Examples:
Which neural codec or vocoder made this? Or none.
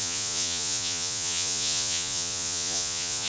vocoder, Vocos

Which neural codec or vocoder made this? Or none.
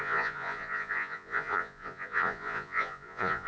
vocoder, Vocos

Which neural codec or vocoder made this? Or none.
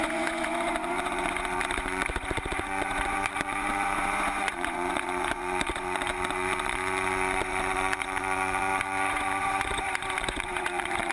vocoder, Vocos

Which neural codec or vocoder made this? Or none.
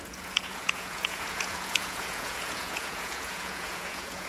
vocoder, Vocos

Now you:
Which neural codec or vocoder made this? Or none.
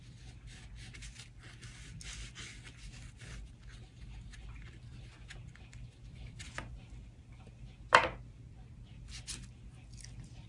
none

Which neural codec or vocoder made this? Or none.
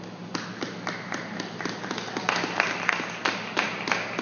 none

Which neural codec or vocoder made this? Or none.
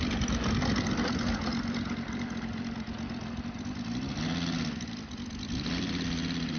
none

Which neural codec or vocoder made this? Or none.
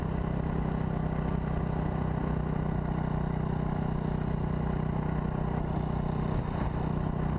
none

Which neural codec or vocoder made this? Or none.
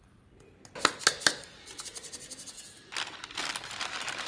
none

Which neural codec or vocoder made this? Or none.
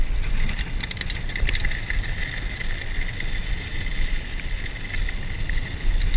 none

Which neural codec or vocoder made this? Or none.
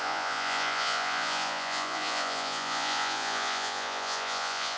vocoder, Vocos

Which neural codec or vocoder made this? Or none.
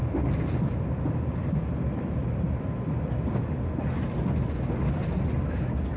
none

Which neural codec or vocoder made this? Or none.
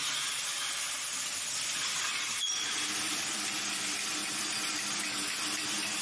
none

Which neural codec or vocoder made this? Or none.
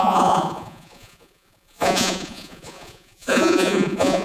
vocoder, Vocos